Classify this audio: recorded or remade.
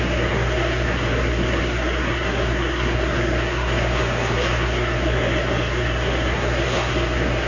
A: remade